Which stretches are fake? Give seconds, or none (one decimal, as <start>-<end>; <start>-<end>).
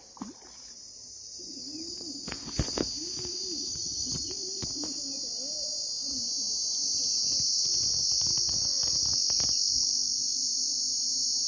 3.7-4.3